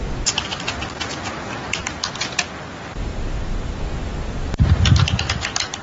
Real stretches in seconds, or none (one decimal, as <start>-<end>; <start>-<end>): 0.0-3.1; 3.8-4.4